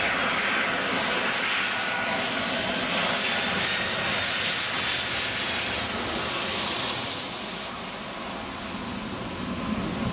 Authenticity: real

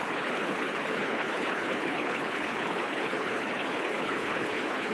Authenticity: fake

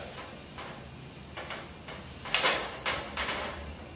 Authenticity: real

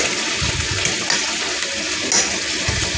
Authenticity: real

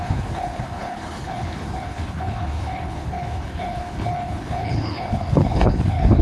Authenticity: fake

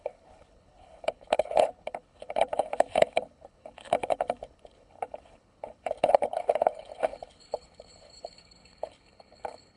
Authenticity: fake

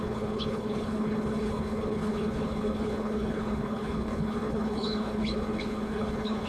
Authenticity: fake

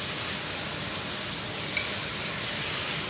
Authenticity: real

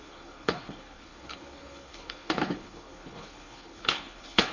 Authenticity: fake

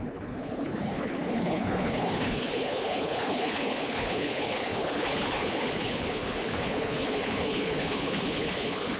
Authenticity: fake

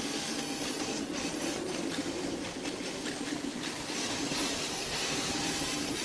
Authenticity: real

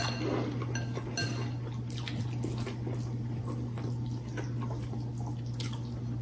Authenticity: real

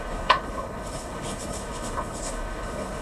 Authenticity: fake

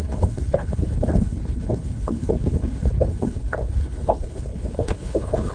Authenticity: fake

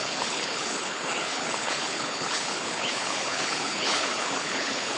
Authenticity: fake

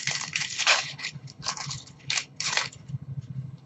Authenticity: fake